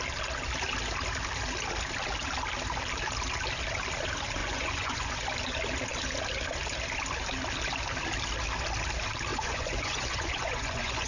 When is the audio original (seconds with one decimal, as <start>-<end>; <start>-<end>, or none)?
0.0-4.4; 5.2-9.3